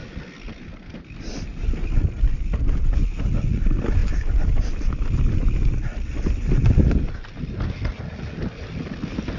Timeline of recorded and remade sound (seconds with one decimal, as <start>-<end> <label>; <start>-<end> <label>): 0.0-9.4 recorded